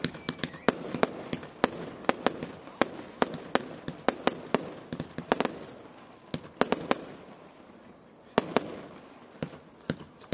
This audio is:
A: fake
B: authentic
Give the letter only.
B